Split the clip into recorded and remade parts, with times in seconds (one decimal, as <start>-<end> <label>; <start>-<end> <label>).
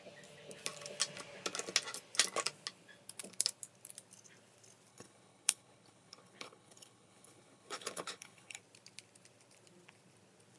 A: 0.0-4.9 recorded; 4.9-8.6 remade; 8.6-10.6 recorded